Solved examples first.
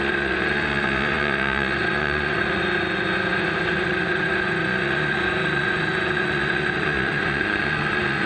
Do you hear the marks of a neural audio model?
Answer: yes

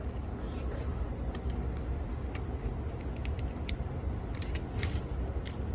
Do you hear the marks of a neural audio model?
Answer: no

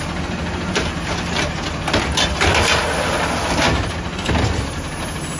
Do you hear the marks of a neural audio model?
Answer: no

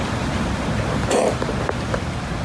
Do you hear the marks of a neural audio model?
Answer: no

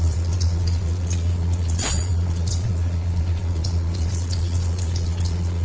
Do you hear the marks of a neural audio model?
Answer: yes